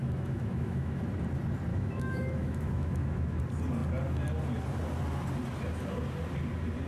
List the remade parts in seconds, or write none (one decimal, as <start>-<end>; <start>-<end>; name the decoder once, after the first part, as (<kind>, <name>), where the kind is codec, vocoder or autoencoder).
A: 0.0-1.0 (autoencoder, DAC-VAE); 1.7-3.4